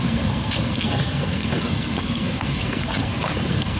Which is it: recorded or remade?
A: remade